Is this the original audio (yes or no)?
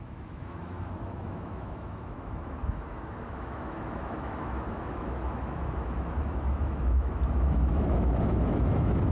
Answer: no